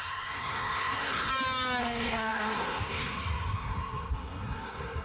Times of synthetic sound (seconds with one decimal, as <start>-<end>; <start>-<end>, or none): 0.0-1.3; 1.8-5.0